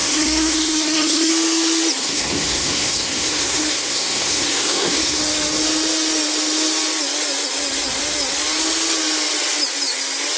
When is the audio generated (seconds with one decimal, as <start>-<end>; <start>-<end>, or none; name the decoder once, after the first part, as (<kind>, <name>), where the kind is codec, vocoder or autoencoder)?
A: 0.0-1.3 (codec, SNAC); 2.0-5.2